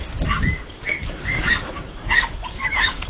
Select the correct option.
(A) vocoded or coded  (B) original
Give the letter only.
A